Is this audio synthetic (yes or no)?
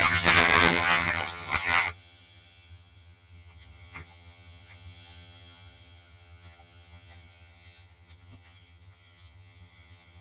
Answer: yes